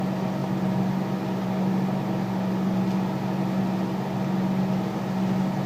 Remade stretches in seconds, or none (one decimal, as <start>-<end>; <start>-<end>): none